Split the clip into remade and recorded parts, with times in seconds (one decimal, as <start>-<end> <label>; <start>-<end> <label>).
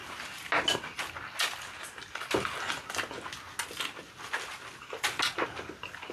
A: 0.0-6.1 recorded